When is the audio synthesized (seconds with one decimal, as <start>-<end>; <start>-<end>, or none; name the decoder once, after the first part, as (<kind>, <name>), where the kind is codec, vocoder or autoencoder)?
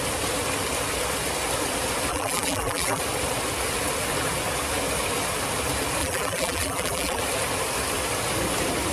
2.1-3.0 (vocoder, BigVGAN v2); 6.0-7.2